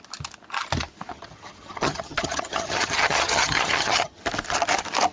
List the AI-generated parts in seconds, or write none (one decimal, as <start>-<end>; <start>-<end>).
1.1-4.2